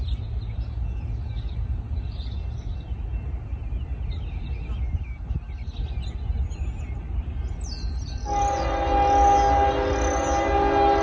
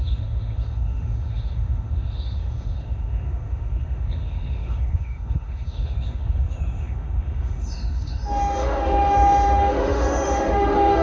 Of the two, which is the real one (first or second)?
first